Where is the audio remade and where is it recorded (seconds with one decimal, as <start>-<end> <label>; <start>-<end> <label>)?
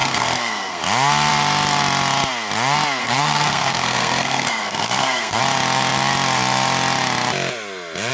0.0-0.8 remade; 0.8-3.0 recorded; 3.0-5.4 remade; 5.4-8.1 recorded